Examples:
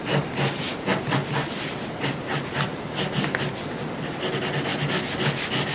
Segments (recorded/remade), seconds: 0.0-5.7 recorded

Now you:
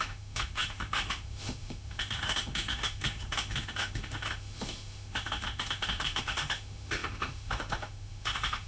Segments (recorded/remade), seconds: 0.0-8.7 remade

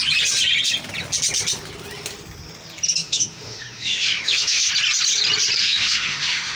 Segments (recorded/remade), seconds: 0.0-3.0 recorded; 3.0-4.7 remade; 4.7-5.6 recorded; 5.6-6.6 remade

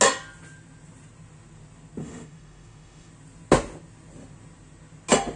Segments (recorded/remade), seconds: 0.0-2.0 recorded; 2.0-3.1 remade; 3.1-5.4 recorded

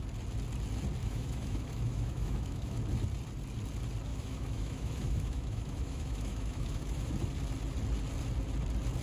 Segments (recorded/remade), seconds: 0.0-1.0 recorded; 1.0-2.8 remade; 2.8-4.1 recorded; 4.1-7.1 remade; 7.1-9.0 recorded

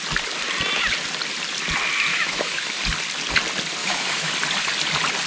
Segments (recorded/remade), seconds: 0.0-2.1 recorded; 2.1-2.8 remade; 2.8-3.8 recorded; 3.8-4.3 remade; 4.3-5.3 recorded

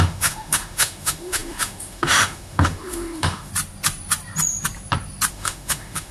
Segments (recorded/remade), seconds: 0.0-3.5 remade; 3.5-5.3 recorded; 5.3-6.1 remade